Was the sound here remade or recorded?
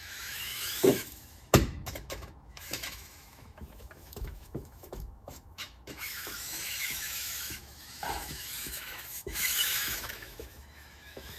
remade